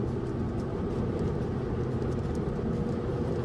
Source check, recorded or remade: recorded